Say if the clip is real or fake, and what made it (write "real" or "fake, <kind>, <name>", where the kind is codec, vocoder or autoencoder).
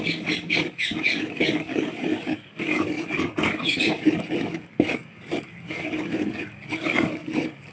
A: fake, codec, DAC